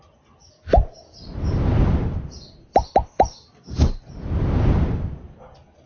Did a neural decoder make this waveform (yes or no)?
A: no